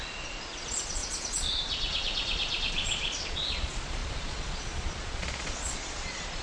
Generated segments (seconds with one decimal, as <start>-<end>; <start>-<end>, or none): 0.0-6.4